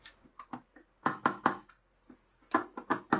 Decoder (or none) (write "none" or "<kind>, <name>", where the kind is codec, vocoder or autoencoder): none